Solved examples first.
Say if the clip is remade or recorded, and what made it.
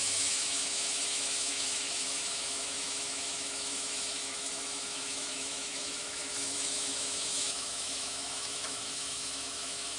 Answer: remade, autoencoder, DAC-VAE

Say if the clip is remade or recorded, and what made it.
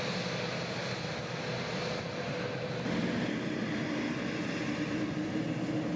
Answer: recorded